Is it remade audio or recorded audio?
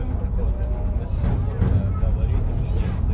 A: recorded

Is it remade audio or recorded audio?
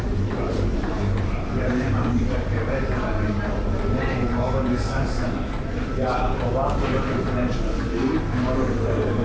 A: remade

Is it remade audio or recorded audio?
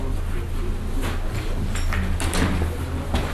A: recorded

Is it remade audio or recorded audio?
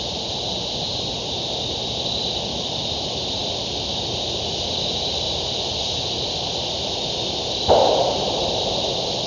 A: recorded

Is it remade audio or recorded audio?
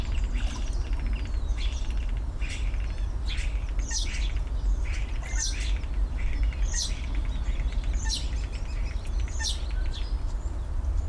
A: recorded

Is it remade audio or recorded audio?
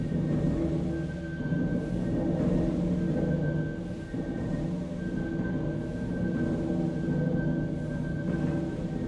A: recorded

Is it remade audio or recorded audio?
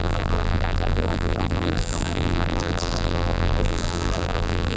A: remade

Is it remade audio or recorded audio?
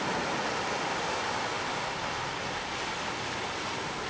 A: recorded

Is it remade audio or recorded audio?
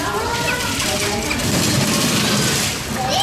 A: recorded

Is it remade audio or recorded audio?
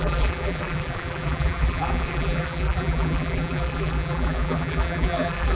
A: remade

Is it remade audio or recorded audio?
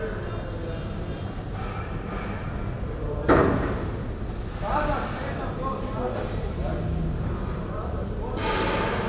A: recorded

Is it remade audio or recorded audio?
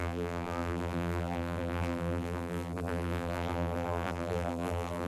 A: remade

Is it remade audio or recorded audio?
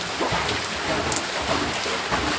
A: recorded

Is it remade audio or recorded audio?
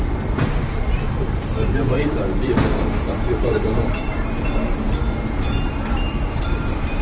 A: remade